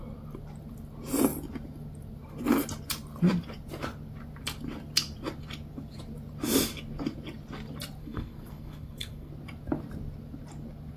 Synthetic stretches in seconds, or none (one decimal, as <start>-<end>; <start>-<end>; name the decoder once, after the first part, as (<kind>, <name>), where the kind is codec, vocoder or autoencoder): 8.0-9.3 (codec, SNAC)